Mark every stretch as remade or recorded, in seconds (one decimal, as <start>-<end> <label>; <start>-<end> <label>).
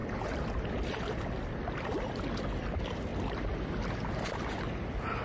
0.0-3.1 recorded; 3.1-3.7 remade; 3.7-5.2 recorded